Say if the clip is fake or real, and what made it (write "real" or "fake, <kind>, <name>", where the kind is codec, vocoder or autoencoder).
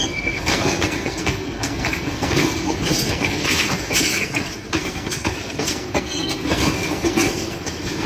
fake, codec, SNAC